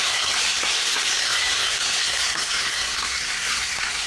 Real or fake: fake